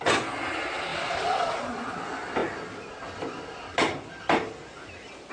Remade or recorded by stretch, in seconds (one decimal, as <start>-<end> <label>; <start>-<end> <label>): 0.0-5.3 recorded